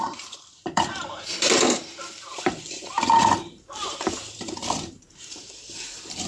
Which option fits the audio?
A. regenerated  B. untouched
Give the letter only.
A